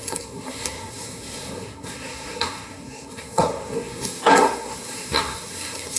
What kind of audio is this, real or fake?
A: fake